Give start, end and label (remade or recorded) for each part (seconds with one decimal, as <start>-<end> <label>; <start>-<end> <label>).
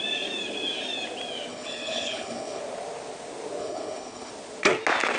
0.0-1.5 recorded; 1.5-2.6 remade; 2.6-3.6 recorded; 3.6-4.3 remade; 4.3-5.2 recorded